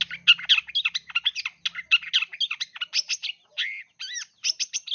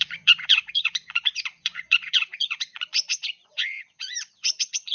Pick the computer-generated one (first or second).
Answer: second